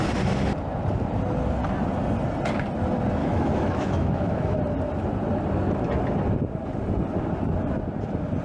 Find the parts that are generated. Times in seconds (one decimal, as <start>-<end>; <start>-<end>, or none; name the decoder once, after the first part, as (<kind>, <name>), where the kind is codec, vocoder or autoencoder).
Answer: 3.2-4.6 (autoencoder, DAC-VAE)